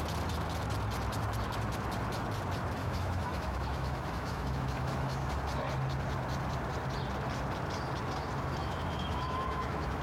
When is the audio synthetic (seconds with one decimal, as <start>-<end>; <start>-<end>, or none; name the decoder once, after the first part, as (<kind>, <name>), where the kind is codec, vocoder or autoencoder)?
2.8-5.3 (autoencoder, DAC-VAE); 8.6-10.0